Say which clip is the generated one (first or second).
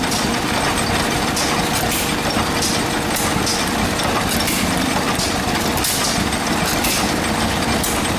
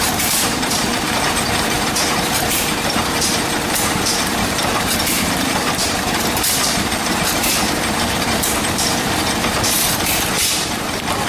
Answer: second